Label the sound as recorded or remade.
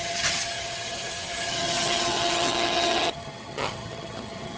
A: remade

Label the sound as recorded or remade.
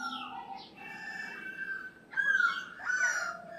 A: recorded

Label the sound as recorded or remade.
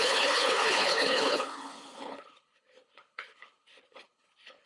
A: remade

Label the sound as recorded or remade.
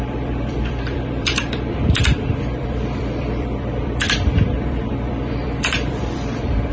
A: remade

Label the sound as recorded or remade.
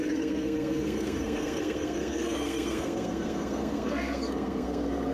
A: remade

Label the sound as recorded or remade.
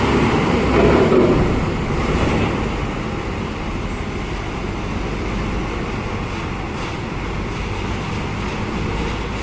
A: recorded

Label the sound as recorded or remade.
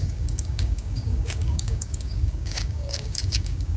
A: remade